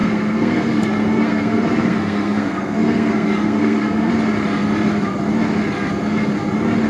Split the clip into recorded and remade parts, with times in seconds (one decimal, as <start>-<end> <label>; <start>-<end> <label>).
0.0-4.1 remade; 4.1-6.9 recorded